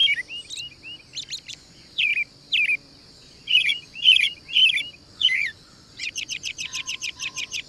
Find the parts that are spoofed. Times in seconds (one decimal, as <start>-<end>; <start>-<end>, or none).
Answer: 1.5-2.1; 3.0-4.6; 5.1-7.7